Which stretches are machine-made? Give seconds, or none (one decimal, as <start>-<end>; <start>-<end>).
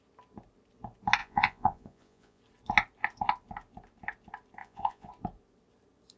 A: 1.2-2.4; 4.6-5.1